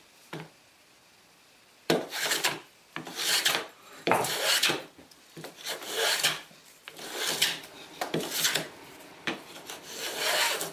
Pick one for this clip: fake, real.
fake